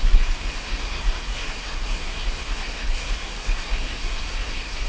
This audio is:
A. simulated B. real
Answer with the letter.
A